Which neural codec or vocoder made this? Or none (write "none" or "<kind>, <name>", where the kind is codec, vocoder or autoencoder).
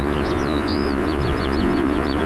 vocoder, Vocos